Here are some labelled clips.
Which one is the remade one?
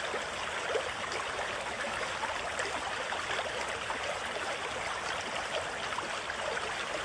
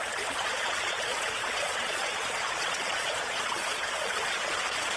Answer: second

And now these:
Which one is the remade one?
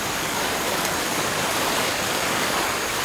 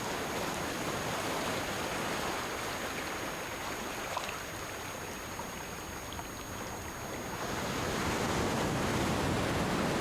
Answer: first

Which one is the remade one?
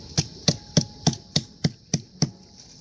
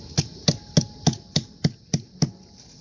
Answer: first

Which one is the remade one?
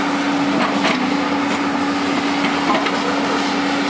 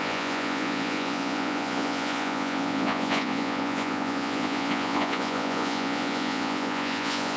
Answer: second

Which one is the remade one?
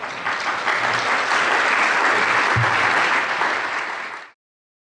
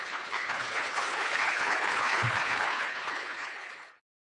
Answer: second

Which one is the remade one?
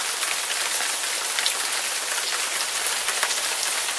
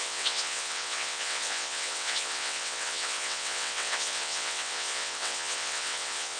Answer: second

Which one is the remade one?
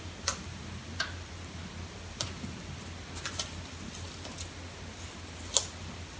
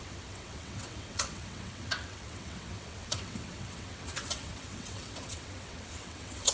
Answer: second